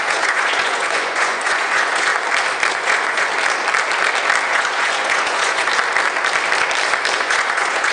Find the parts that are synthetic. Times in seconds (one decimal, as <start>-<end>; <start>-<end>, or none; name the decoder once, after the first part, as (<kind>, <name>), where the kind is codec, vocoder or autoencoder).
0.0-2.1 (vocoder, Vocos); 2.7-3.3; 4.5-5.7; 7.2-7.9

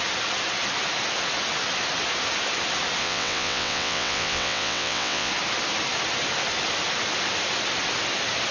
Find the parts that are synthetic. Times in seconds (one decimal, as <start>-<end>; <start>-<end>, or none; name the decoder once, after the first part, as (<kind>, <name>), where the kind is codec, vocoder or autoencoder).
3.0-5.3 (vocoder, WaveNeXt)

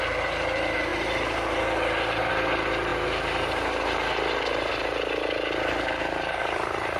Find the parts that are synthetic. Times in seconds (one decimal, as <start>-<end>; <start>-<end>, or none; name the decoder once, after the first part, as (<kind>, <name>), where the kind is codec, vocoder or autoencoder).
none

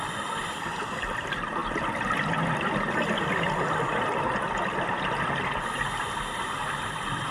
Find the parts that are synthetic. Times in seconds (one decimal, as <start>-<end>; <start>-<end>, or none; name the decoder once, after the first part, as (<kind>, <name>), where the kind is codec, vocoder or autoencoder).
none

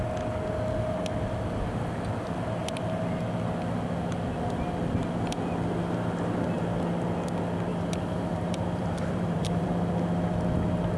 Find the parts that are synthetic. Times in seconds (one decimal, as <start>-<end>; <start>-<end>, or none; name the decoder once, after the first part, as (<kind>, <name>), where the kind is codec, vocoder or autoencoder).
7.7-9.7 (vocoder, BigVGAN v2)

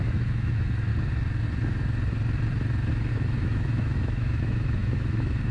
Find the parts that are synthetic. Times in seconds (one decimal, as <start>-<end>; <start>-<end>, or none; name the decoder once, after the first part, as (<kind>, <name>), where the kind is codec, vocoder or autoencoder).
0.0-0.9 (autoencoder, DAC-VAE); 3.1-5.5